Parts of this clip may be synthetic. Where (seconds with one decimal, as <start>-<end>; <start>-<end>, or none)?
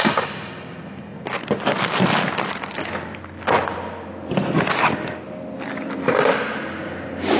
none